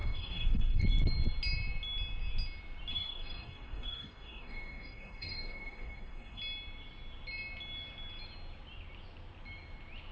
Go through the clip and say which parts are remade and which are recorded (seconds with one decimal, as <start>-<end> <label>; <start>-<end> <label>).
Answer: 0.0-0.8 remade; 0.8-2.9 recorded; 2.9-6.4 remade; 6.4-10.1 recorded